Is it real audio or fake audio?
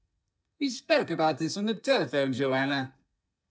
fake